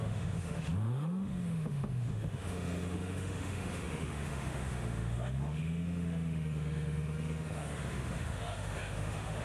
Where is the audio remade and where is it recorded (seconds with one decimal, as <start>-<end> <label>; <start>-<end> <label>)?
0.0-9.4 remade